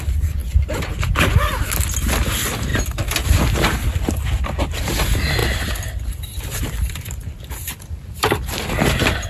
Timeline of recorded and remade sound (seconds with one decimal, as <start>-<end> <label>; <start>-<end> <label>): 0.0-9.3 recorded